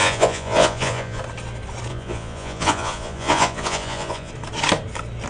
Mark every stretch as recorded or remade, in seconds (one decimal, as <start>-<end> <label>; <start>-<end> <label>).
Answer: 0.0-1.2 remade; 1.2-1.9 recorded; 1.9-4.3 remade; 4.3-5.3 recorded